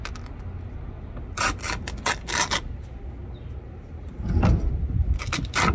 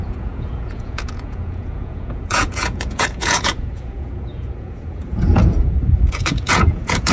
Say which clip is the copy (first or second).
second